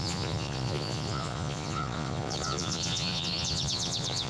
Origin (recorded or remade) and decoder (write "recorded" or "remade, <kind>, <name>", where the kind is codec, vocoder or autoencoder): remade, vocoder, Vocos